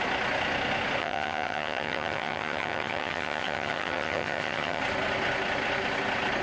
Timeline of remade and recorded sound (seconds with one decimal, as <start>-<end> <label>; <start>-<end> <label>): 0.0-1.0 recorded; 1.0-4.8 remade; 4.8-6.4 recorded